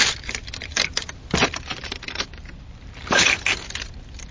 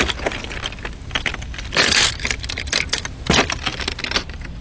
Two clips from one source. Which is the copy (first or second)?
first